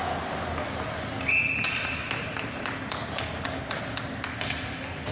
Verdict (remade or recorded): recorded